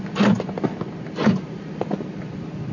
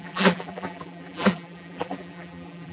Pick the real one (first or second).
first